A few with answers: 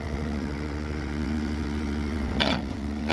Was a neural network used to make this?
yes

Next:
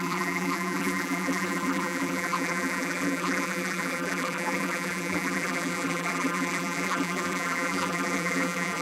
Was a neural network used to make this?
yes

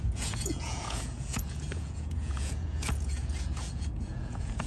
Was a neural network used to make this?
yes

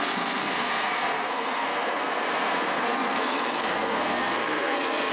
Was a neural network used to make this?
yes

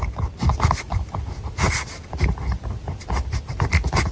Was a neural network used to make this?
no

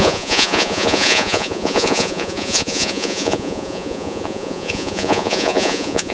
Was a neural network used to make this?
yes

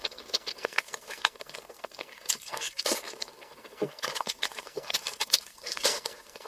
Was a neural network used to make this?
yes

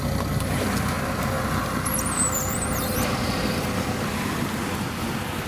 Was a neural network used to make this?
yes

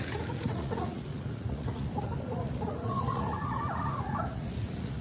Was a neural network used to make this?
yes